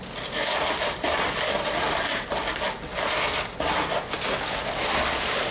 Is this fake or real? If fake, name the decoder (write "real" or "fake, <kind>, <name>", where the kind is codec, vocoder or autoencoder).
real